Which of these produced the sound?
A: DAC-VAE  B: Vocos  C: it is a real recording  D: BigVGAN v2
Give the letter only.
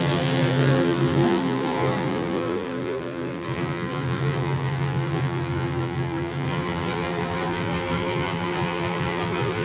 D